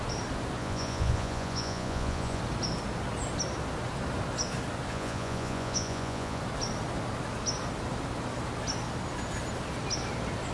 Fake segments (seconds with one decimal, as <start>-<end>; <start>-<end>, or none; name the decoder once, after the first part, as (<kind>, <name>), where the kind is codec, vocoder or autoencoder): 0.6-2.4 (vocoder, Vocos); 4.9-6.4

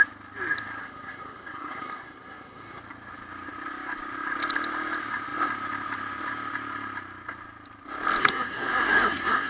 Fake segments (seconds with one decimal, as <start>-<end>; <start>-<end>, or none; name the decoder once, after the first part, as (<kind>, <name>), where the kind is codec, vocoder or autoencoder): 0.8-2.8 (codec, SNAC); 8.2-9.5

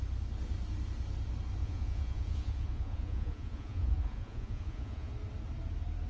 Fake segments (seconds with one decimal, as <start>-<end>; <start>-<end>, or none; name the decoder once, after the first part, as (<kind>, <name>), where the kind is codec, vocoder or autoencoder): 1.6-5.1 (vocoder, Vocos)